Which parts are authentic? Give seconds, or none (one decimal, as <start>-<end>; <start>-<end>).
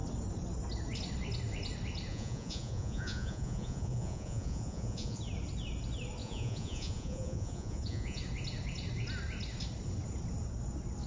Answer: 0.0-2.1; 5.2-6.2; 8.2-11.1